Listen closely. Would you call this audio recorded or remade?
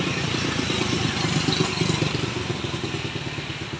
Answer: recorded